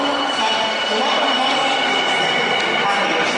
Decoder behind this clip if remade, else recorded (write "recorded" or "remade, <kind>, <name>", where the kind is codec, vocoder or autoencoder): recorded